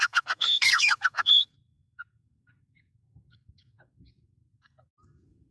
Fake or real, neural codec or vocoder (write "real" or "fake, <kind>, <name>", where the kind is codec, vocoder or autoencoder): fake, codec, SNAC